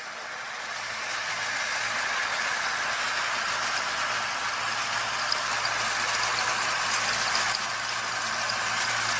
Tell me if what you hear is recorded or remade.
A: recorded